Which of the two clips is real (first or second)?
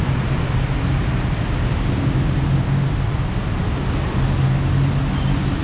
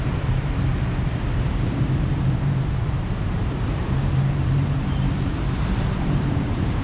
first